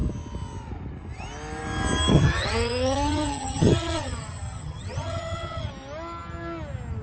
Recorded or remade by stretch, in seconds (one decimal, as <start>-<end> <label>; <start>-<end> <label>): 0.0-2.1 recorded; 2.1-5.7 remade; 5.7-7.0 recorded